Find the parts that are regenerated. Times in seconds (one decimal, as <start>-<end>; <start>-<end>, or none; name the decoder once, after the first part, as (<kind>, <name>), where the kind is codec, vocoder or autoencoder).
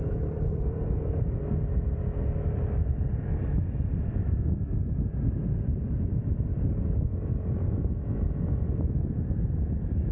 none